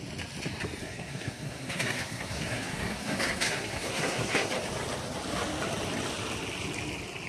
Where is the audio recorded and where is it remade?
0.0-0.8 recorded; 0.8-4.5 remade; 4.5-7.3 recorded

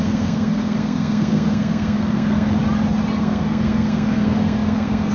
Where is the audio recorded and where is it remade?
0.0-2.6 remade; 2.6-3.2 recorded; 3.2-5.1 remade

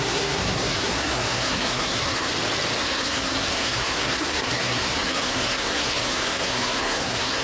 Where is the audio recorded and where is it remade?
0.0-2.3 remade; 2.3-2.8 recorded; 2.8-7.4 remade

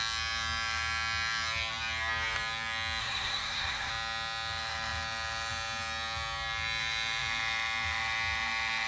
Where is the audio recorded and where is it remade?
0.0-3.0 recorded; 3.0-3.9 remade; 3.9-8.9 recorded

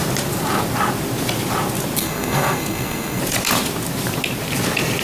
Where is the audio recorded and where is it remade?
0.0-2.0 recorded; 2.0-3.2 remade; 3.2-5.0 recorded

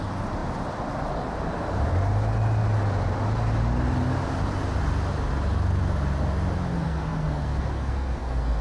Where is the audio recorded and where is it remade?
0.0-6.7 recorded; 6.7-8.6 remade

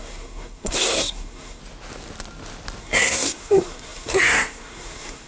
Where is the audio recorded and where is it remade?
0.0-1.6 remade; 1.6-2.8 recorded; 2.8-5.3 remade